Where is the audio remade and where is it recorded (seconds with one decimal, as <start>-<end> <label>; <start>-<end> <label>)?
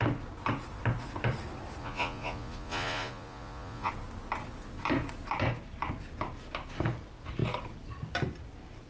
0.0-1.8 recorded; 1.8-3.9 remade; 3.9-8.9 recorded